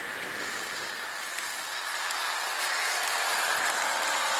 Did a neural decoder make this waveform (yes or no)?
no